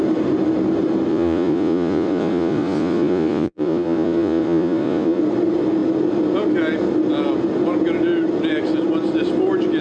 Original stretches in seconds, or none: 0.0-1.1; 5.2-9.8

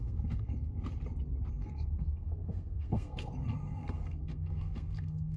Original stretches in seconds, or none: 0.7-1.5

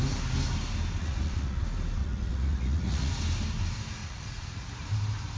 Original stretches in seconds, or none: 0.0-1.0; 1.6-2.0; 3.1-4.0; 4.7-5.4

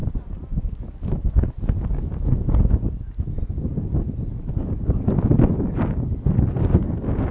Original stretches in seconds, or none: 0.0-7.3

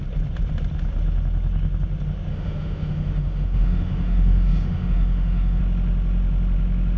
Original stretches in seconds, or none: 0.0-2.3; 5.6-7.0

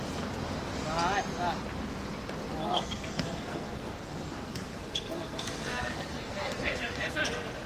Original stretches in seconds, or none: 0.0-2.6; 7.2-7.7

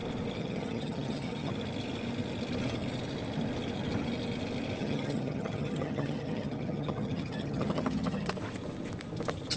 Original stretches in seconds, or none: 0.0-0.4; 1.5-4.8; 8.3-9.6